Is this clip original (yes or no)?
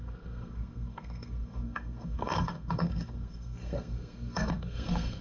no